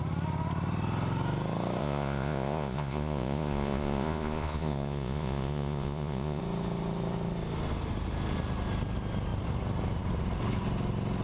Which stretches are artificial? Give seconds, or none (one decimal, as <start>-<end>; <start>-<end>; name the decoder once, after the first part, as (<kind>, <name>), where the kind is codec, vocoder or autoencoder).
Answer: 1.8-6.4 (vocoder, Vocos)